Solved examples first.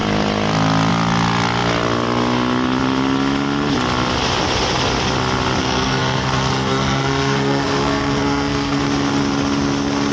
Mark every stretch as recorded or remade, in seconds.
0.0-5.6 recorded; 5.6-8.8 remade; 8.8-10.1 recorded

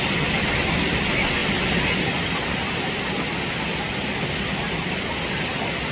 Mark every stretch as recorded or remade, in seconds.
0.0-5.9 recorded

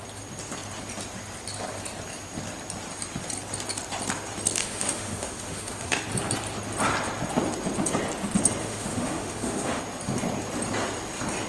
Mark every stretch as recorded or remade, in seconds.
0.0-4.6 recorded; 4.6-6.0 remade; 6.0-8.6 recorded; 8.6-9.8 remade; 9.8-11.5 recorded

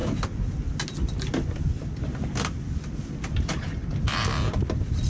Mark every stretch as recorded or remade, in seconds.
0.0-5.1 recorded